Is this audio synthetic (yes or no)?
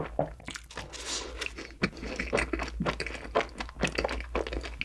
no